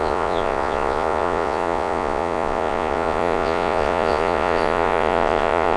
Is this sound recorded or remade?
remade